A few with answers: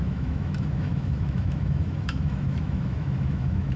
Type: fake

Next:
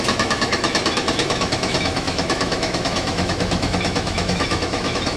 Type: fake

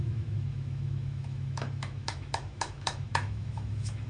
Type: fake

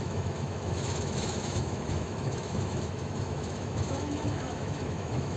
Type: fake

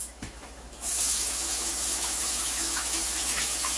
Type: fake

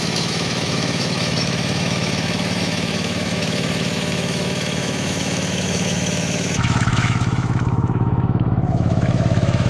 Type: fake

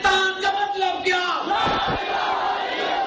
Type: real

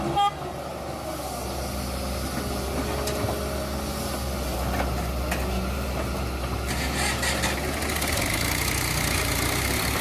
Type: real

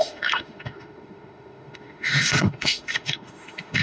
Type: fake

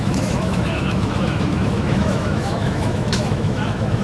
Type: fake